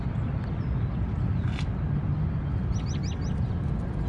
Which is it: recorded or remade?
recorded